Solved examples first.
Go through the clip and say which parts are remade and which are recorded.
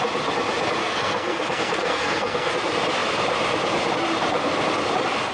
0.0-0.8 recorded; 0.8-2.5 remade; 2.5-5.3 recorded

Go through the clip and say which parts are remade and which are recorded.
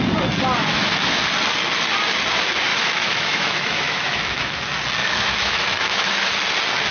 0.0-0.6 recorded; 0.6-1.2 remade; 1.2-2.7 recorded; 2.7-4.6 remade; 4.6-5.0 recorded; 5.0-6.3 remade; 6.3-6.9 recorded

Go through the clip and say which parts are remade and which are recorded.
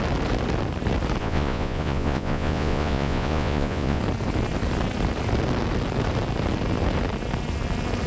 0.0-1.2 recorded; 1.2-4.0 remade; 4.0-8.1 recorded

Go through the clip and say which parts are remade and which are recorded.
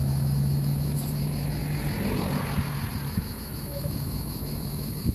0.0-1.6 remade; 1.6-3.1 recorded; 3.1-5.1 remade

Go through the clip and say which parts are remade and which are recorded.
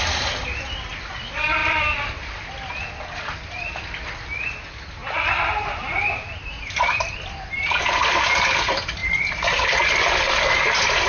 0.0-1.6 recorded; 1.6-2.2 remade; 2.2-5.0 recorded; 5.0-8.0 remade; 8.0-9.0 recorded; 9.0-10.4 remade; 10.4-11.1 recorded